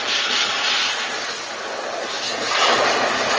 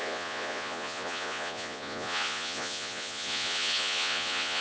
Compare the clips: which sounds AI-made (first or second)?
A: second